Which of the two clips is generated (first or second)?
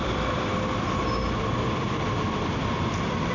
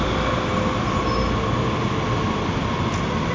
first